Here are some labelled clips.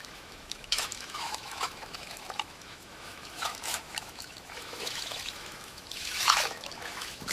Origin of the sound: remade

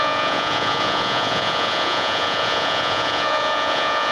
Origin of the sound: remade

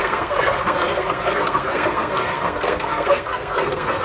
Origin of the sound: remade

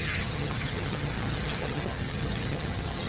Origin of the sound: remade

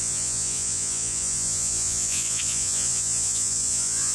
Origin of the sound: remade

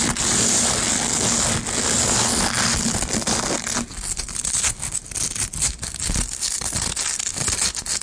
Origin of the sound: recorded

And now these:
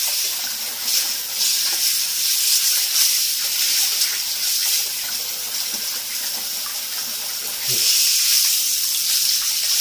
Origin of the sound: recorded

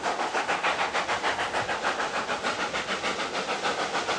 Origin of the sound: recorded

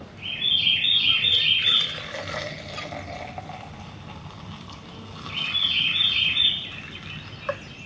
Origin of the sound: recorded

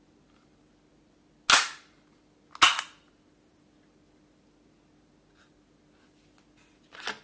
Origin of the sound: recorded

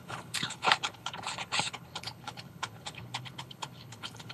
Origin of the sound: remade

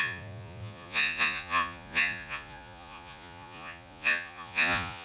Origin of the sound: remade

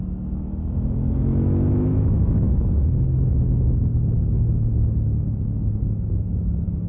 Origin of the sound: remade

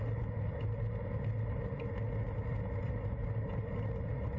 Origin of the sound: recorded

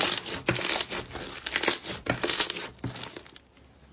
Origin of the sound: recorded